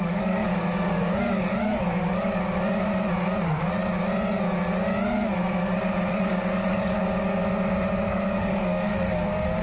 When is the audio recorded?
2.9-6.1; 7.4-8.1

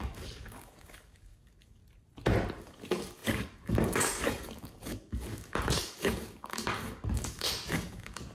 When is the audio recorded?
1.8-2.6

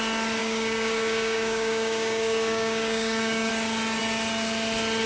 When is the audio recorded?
0.0-0.4; 3.5-5.1

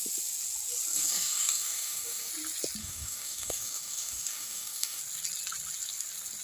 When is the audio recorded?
0.0-0.9; 2.3-2.8; 5.0-6.4

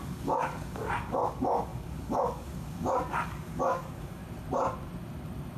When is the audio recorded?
4.2-5.6